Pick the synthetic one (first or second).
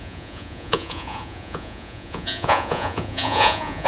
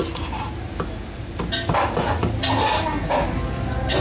first